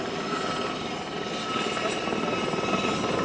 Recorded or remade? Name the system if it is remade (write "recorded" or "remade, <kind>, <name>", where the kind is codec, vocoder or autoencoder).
recorded